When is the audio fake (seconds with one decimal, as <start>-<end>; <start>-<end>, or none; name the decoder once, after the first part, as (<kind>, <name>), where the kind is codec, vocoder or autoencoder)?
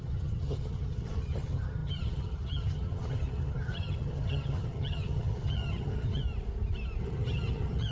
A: 0.0-6.2 (vocoder, HiFi-GAN); 7.0-7.9